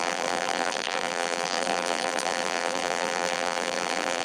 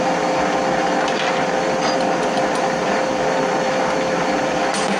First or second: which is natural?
second